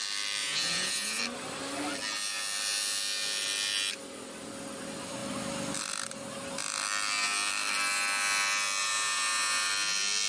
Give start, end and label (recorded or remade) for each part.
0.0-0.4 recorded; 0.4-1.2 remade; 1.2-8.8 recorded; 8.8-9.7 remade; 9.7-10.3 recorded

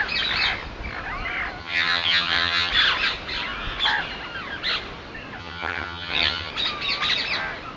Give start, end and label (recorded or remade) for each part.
0.0-1.6 recorded; 1.6-2.7 remade; 2.7-5.4 recorded; 5.4-6.5 remade; 6.5-7.8 recorded

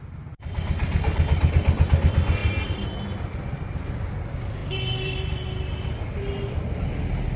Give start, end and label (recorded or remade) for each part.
0.0-7.4 recorded

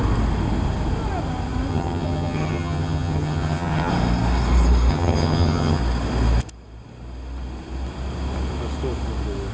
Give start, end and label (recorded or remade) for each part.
0.0-1.7 recorded; 1.7-3.9 remade; 3.9-4.9 recorded; 4.9-5.8 remade; 5.8-9.5 recorded